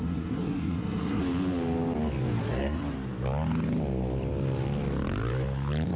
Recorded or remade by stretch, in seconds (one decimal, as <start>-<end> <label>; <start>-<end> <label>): 0.0-1.2 remade; 1.2-2.4 recorded; 2.4-2.8 remade; 2.8-6.0 recorded